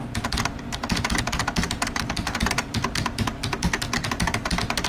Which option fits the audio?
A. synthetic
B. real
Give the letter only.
B